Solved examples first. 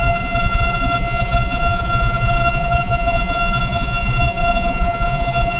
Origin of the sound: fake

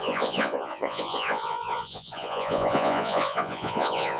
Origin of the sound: fake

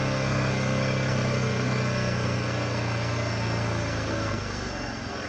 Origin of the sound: fake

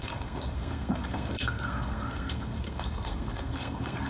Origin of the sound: fake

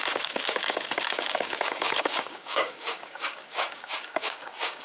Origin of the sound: fake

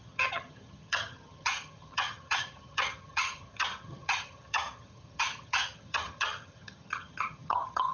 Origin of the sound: fake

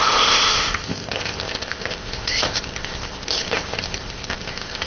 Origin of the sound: fake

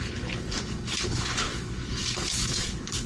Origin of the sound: fake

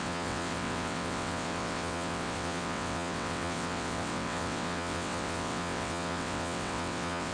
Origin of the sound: fake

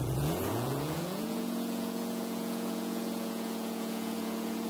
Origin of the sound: fake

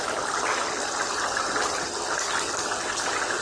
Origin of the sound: real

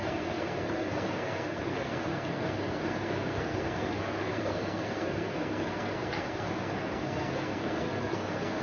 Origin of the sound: fake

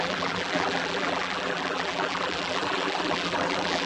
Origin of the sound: fake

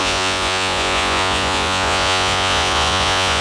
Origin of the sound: fake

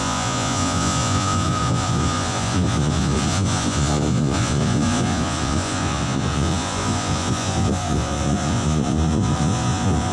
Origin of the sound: fake